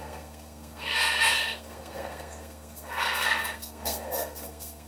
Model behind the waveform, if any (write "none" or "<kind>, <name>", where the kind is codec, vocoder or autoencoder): codec, SNAC